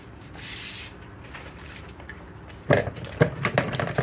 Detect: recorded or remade recorded